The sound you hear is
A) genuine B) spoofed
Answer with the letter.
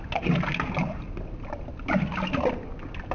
A